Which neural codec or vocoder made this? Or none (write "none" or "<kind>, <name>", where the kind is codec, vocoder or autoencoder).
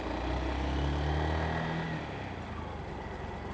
none